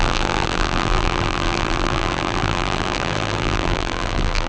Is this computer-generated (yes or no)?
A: yes